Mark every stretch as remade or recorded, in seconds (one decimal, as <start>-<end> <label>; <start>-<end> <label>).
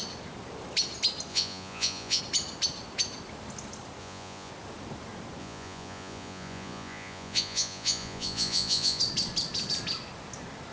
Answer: 0.0-1.3 recorded; 1.3-2.2 remade; 2.2-4.0 recorded; 4.0-4.5 remade; 4.5-5.4 recorded; 5.4-9.0 remade; 9.0-10.7 recorded